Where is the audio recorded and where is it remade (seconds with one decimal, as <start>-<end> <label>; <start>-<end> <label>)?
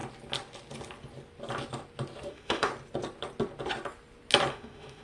0.0-2.3 recorded; 2.3-2.7 remade; 2.7-4.5 recorded; 4.5-5.0 remade